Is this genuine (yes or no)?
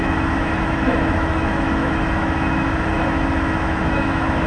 no